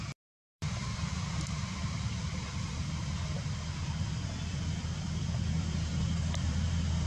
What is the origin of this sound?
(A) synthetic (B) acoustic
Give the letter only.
A